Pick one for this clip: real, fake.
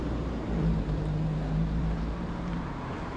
fake